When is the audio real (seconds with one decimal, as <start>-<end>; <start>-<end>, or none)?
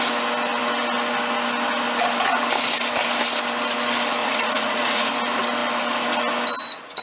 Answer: 0.0-4.2; 5.1-7.0